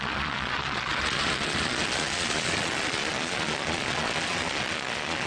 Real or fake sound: fake